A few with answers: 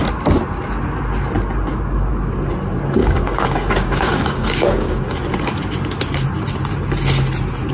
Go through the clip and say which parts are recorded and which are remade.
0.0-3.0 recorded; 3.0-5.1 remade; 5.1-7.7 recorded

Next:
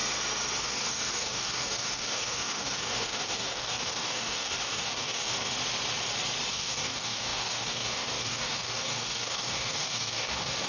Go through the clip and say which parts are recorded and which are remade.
0.0-0.6 recorded; 0.6-5.5 remade; 5.5-6.5 recorded; 6.5-10.7 remade